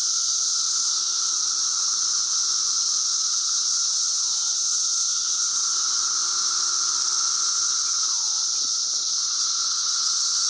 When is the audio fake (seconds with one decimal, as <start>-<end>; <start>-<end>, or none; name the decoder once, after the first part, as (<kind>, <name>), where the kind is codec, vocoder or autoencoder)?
1.8-2.4 (vocoder, WaveNeXt); 3.3-6.2; 7.5-10.5